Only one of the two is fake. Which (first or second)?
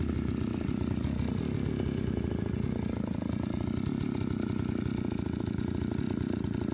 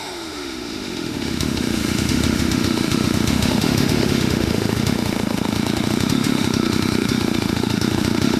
second